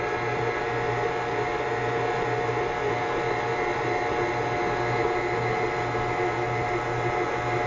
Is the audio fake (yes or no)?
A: no